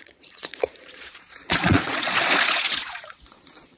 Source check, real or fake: fake